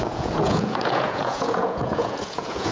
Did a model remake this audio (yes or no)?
yes